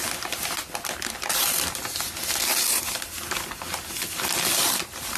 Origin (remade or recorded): recorded